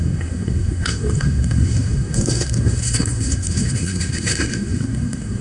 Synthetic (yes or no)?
yes